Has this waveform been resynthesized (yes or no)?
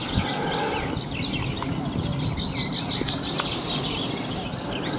no